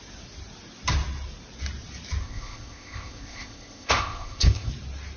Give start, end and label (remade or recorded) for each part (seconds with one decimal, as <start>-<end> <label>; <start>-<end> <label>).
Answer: 0.0-2.2 recorded; 2.2-4.7 remade; 4.7-5.2 recorded